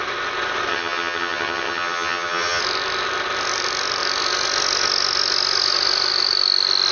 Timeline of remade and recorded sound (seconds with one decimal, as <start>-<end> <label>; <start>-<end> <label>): 0.0-0.7 recorded; 0.7-2.6 remade; 2.6-6.9 recorded